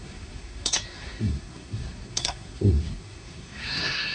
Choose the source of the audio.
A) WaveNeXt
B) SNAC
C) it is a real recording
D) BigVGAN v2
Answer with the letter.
B